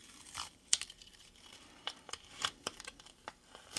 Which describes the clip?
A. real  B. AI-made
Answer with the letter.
B